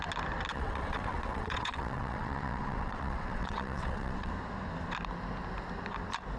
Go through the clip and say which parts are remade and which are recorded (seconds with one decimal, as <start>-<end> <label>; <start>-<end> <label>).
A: 0.0-0.5 recorded; 0.5-4.3 remade; 4.3-6.4 recorded